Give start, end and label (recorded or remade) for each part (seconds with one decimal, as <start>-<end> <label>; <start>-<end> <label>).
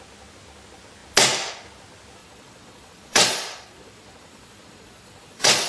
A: 0.0-2.2 recorded; 2.2-5.7 remade